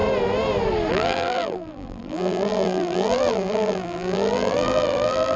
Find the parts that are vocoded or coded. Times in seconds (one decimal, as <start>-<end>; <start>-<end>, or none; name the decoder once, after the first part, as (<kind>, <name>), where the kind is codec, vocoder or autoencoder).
0.9-5.4 (vocoder, BigVGAN v2)